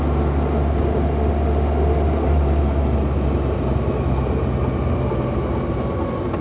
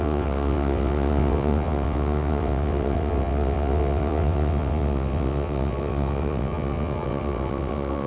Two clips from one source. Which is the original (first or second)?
first